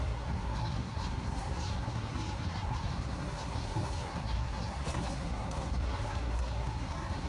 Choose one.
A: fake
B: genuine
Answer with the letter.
A